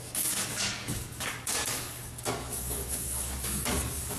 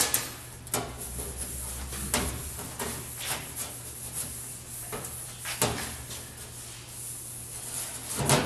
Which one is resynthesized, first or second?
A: first